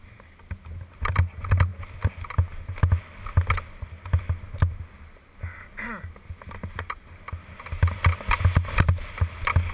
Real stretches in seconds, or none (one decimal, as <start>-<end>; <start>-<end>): 0.0-9.7